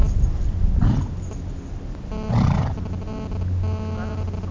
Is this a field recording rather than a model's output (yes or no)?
yes